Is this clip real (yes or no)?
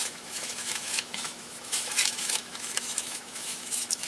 no